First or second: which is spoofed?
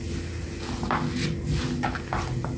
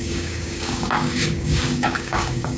second